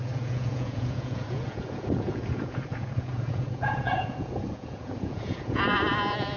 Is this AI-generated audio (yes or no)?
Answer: yes